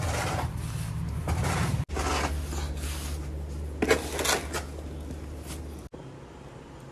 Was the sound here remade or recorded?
recorded